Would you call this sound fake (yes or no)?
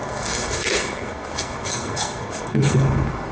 yes